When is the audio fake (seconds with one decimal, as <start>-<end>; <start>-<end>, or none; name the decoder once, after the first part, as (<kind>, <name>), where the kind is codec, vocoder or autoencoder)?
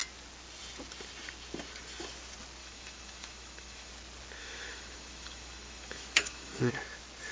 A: 2.6-3.9 (autoencoder, DAC-VAE); 4.4-6.7